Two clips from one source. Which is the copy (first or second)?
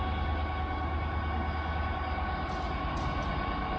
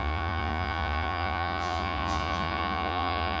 second